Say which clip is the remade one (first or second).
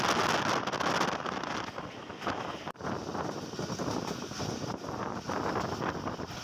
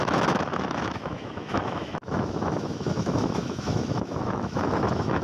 second